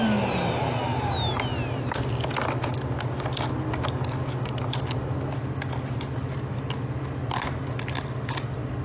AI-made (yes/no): no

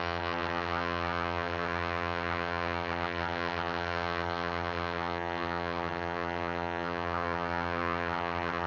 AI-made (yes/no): yes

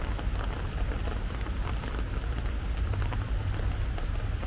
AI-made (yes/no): no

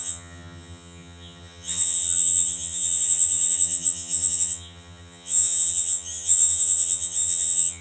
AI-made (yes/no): yes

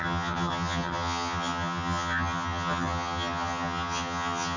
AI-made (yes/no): yes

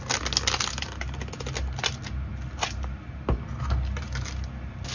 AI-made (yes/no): no